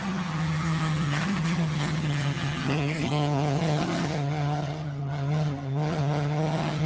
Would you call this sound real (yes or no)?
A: no